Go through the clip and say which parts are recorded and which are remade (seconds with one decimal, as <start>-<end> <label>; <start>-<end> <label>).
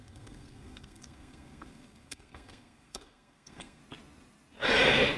0.0-3.8 remade; 3.8-5.2 recorded